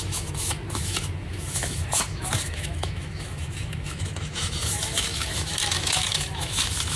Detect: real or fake fake